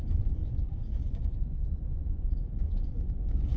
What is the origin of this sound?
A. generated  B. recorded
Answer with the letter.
A